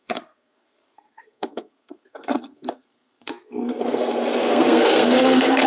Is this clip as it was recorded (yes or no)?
no